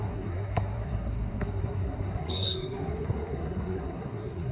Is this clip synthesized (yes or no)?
yes